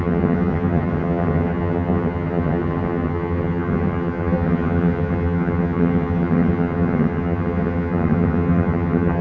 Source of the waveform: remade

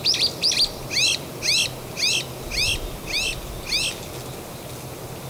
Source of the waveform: recorded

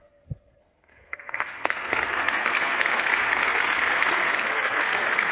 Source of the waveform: remade